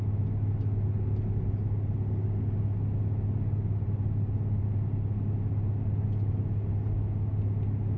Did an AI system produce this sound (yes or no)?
no